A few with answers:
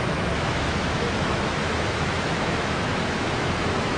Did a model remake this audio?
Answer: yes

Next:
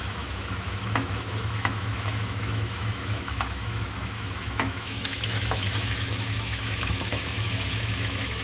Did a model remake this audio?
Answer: yes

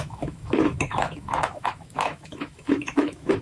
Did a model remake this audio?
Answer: yes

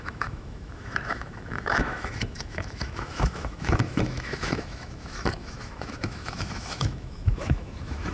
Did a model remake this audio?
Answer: yes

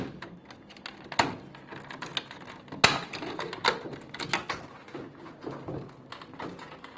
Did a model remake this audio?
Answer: no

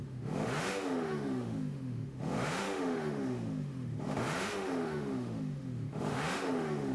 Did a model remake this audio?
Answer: yes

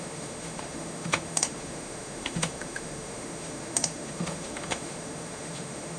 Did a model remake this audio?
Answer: yes